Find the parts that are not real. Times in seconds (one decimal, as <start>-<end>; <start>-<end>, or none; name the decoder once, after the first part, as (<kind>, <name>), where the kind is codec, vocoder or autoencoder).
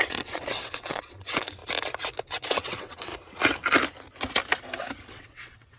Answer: 0.0-1.6 (vocoder, WaveNeXt); 2.2-3.1; 5.1-5.8